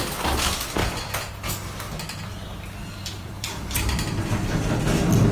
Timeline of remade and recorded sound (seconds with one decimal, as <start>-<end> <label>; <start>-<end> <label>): 0.0-2.8 recorded; 2.8-3.6 remade; 3.6-5.3 recorded